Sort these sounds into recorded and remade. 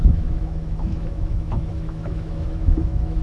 remade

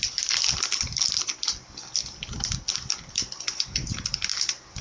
recorded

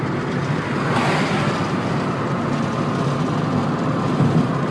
recorded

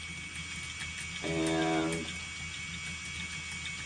recorded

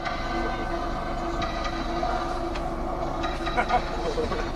recorded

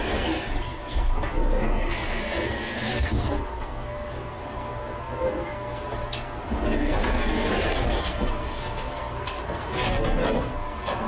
remade